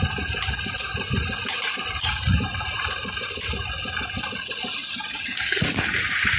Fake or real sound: real